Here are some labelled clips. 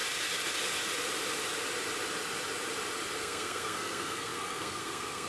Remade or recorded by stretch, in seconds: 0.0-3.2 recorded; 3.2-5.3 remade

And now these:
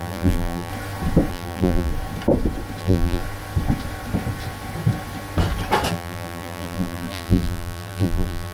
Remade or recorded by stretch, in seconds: 0.0-0.7 remade; 0.7-1.3 recorded; 1.3-1.9 remade; 1.9-2.8 recorded; 2.8-3.2 remade; 3.2-5.9 recorded; 5.9-8.5 remade

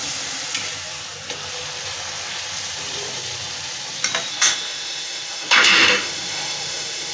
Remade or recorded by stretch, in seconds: 0.0-4.3 recorded; 4.3-7.1 remade

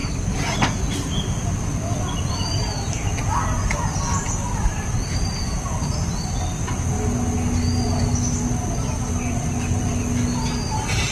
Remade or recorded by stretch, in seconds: 0.0-11.1 recorded

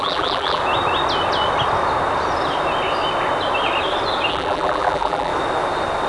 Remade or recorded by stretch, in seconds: 0.0-0.6 remade; 0.6-4.3 recorded; 4.3-5.3 remade; 5.3-6.1 recorded

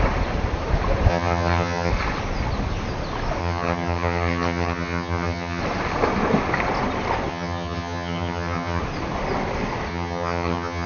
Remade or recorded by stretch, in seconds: 0.0-1.1 recorded; 1.1-1.9 remade; 1.9-3.4 recorded; 3.4-5.6 remade; 5.6-7.3 recorded; 7.3-8.8 remade; 8.8-9.9 recorded; 9.9-10.9 remade

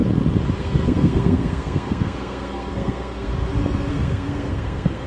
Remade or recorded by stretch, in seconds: 0.0-0.6 recorded; 0.6-3.3 remade; 3.3-3.9 recorded; 3.9-5.1 remade

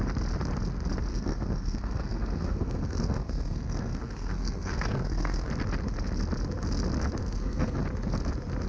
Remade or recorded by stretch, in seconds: 0.0-1.1 recorded; 1.1-5.5 remade; 5.5-7.2 recorded; 7.2-7.8 remade; 7.8-8.7 recorded